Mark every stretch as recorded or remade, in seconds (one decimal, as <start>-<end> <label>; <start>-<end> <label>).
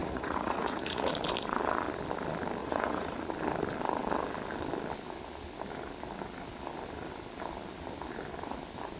0.0-1.1 remade; 1.1-2.6 recorded; 2.6-3.2 remade; 3.2-9.0 recorded